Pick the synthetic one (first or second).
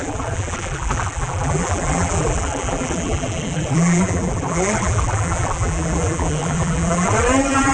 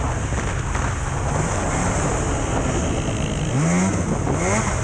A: first